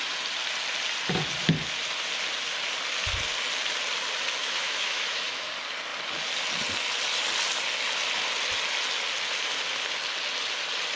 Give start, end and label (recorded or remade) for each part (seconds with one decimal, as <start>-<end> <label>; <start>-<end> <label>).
0.0-4.4 recorded; 4.4-5.5 remade; 5.5-11.0 recorded